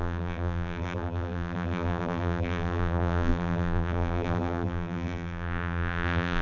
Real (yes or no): no